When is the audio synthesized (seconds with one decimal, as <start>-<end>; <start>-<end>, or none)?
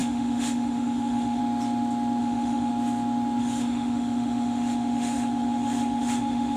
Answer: 0.0-1.4; 2.2-2.7; 3.4-6.6